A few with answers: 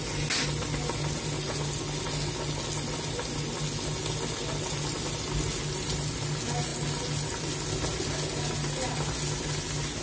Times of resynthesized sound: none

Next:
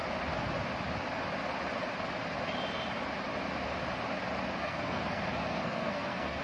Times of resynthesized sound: 4.6-6.4

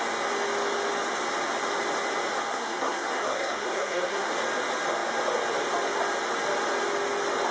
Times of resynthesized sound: 2.5-4.3

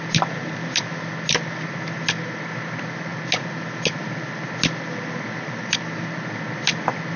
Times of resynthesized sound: 5.6-6.1